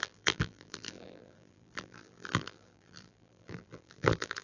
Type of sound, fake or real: fake